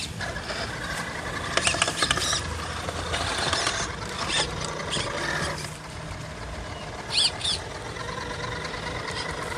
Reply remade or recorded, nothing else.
recorded